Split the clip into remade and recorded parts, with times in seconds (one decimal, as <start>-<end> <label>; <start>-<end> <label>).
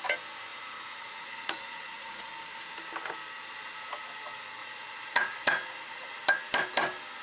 0.0-0.5 recorded; 0.5-2.3 remade; 2.3-4.6 recorded; 4.6-6.2 remade; 6.2-7.2 recorded